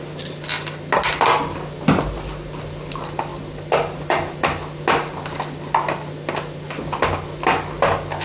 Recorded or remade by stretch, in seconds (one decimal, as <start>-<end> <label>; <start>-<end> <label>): 0.0-8.2 recorded